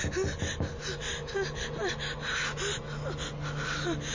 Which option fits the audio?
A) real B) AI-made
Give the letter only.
A